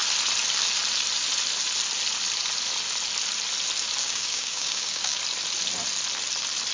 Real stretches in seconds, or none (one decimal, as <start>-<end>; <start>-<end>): 0.0-4.0; 5.2-6.7